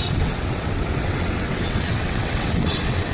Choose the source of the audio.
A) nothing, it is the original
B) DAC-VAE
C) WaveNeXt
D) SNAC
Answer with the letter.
C